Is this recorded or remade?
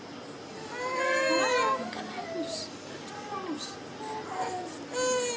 recorded